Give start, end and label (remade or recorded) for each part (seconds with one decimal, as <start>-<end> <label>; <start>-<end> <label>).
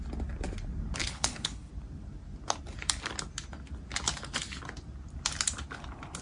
0.0-1.0 recorded; 1.0-1.7 remade; 1.7-6.2 recorded